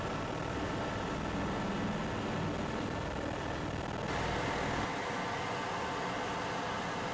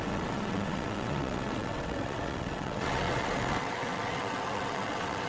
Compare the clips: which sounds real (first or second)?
first